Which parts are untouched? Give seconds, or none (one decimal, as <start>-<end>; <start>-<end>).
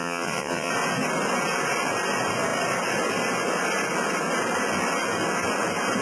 0.7-6.0